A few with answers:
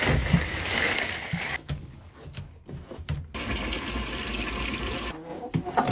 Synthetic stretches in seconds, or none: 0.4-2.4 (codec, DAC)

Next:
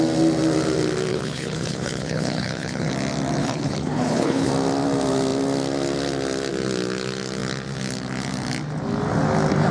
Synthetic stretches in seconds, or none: 1.1-2.9 (codec, HILCodec); 3.4-4.5